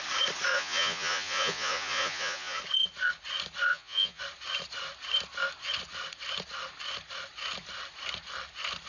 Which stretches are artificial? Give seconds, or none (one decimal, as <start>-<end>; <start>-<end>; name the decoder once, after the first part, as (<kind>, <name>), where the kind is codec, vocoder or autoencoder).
0.5-2.6 (vocoder, Vocos); 3.7-4.2